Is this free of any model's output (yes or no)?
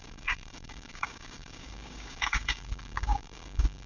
no